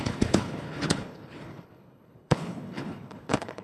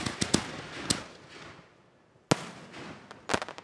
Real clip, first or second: second